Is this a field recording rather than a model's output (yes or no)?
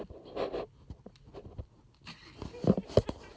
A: yes